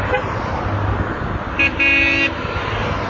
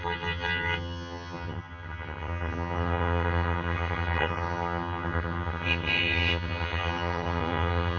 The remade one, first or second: second